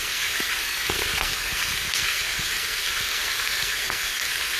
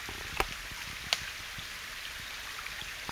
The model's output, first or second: first